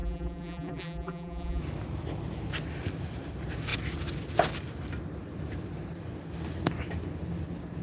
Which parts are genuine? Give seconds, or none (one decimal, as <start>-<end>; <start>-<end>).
1.6-7.8